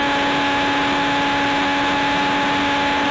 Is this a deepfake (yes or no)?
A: no